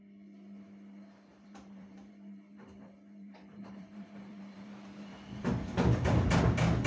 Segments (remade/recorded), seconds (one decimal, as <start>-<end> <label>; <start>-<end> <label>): 0.0-1.3 recorded; 1.3-5.4 remade; 5.4-6.9 recorded